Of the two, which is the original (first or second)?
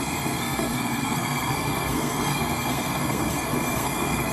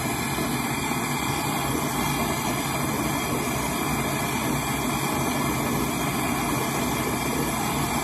second